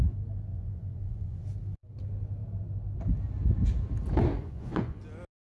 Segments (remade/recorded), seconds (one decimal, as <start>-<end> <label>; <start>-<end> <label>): 0.0-0.5 recorded; 0.5-1.4 remade; 1.4-4.4 recorded; 4.4-5.0 remade; 5.0-5.4 recorded